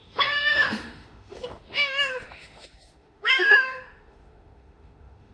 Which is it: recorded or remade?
remade